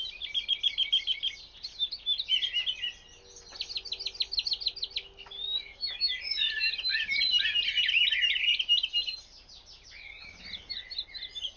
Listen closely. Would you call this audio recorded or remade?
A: recorded